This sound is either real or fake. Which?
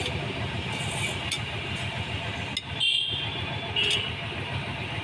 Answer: real